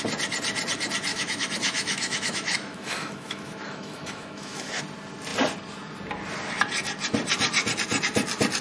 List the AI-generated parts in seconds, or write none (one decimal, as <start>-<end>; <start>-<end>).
1.1-4.8